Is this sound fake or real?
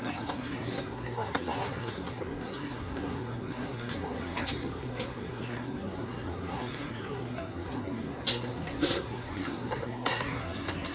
fake